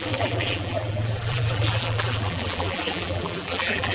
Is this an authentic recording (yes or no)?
no